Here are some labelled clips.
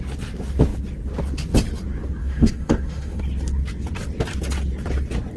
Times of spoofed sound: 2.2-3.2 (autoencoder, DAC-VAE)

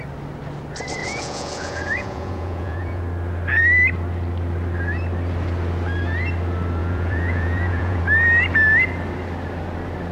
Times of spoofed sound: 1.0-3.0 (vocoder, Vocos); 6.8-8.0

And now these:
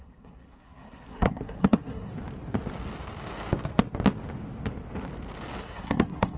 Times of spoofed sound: 0.0-2.1 (codec, SNAC); 5.6-6.4